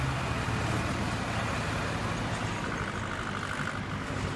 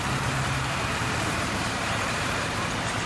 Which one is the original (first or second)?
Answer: first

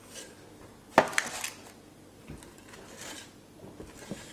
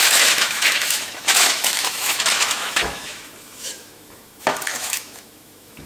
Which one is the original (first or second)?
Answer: first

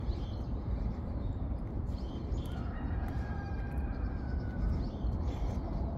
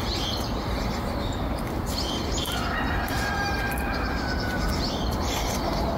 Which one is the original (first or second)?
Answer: second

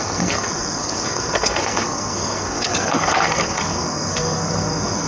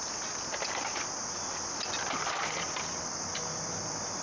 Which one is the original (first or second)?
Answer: second